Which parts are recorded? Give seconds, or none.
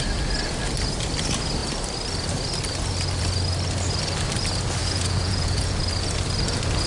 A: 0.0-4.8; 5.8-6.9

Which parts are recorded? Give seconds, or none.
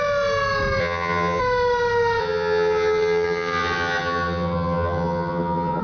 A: 0.0-0.8; 1.4-2.2